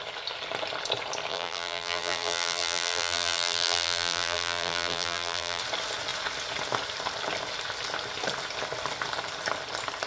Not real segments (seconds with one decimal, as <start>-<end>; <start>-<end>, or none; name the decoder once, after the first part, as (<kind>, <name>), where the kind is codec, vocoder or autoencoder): 1.3-5.6 (vocoder, BigVGAN v2)